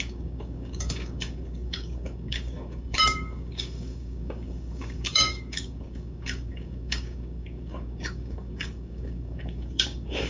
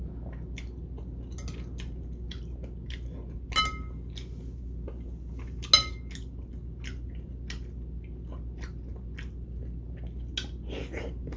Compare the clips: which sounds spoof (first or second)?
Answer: first